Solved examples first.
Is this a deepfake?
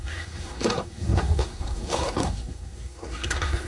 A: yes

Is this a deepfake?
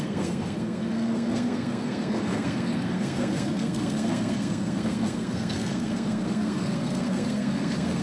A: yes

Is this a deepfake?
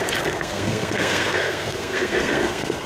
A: yes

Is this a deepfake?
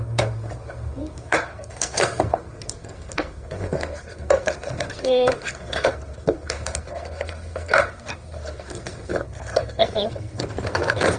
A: yes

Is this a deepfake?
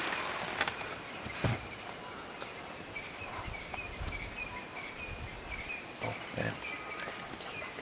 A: no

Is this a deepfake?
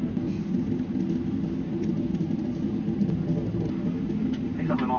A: no